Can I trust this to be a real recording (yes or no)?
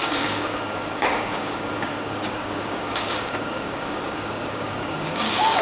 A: no